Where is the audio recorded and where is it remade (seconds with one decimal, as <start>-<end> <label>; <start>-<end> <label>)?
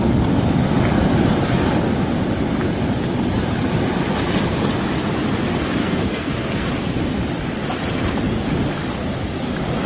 0.0-5.8 recorded; 5.8-6.7 remade; 6.7-9.9 recorded